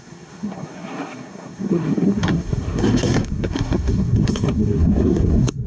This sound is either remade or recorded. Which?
remade